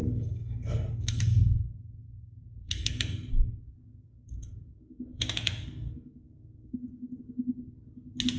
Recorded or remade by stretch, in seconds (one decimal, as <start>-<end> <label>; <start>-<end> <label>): 0.0-3.3 remade; 3.3-3.9 recorded; 3.9-7.2 remade; 7.2-8.4 recorded